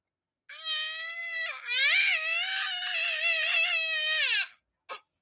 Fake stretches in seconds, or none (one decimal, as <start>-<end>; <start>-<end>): none